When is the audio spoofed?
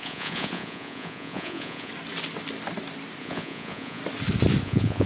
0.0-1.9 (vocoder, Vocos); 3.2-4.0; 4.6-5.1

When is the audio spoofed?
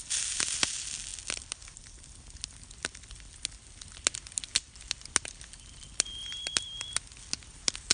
none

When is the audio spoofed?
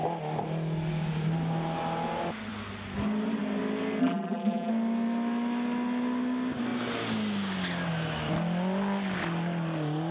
4.0-4.7 (vocoder, BigVGAN v2)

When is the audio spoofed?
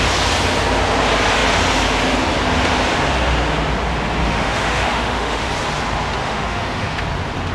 4.2-5.5 (autoencoder, DAC-VAE); 6.2-7.0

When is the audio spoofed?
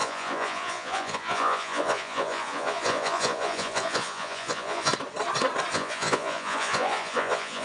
0.0-4.9 (vocoder, Vocos); 5.7-7.6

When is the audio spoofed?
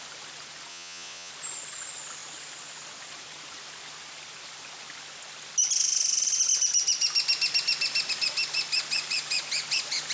0.7-1.3 (vocoder, Vocos)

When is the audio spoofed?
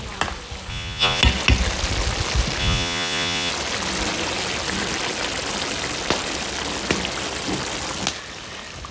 0.7-1.2 (vocoder, Vocos); 2.6-3.5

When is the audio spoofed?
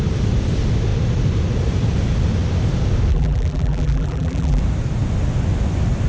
3.1-4.6 (vocoder, BigVGAN v2)